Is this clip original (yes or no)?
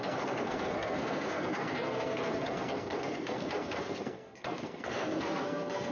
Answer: no